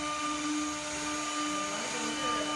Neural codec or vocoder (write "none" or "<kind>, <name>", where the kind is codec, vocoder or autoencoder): none